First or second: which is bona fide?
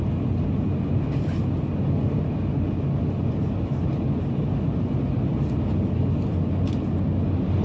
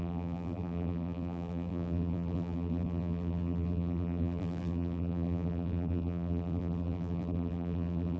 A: first